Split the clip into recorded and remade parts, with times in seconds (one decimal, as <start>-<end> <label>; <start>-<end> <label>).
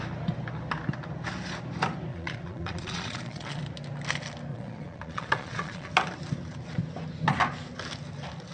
0.0-2.1 recorded; 2.1-3.6 remade; 3.6-4.5 recorded; 4.5-5.9 remade; 5.9-8.5 recorded